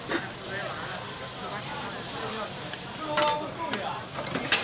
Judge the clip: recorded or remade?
recorded